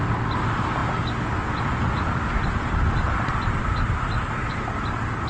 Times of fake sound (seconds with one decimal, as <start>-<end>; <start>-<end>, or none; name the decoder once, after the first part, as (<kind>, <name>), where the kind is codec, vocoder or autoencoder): none